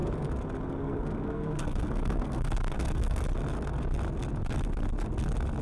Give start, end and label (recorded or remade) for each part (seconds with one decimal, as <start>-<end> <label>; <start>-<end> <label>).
0.0-0.7 recorded; 0.7-3.2 remade; 3.2-5.6 recorded